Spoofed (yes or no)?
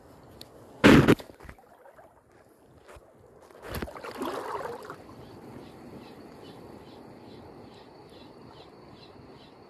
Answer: no